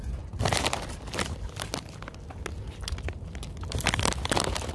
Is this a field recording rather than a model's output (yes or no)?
yes